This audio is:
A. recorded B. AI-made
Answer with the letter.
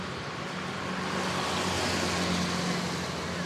A